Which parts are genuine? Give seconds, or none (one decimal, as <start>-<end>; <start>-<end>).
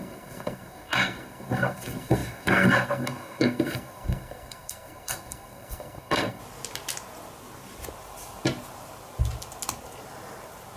6.4-10.8